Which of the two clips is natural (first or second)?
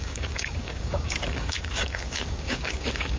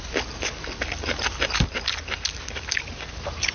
second